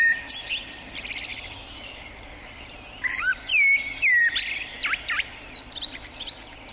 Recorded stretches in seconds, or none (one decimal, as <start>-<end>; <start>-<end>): 1.3-2.0